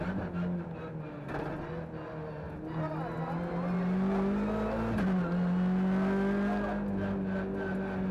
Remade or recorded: recorded